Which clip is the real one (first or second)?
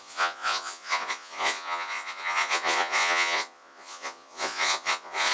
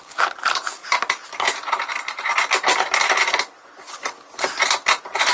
second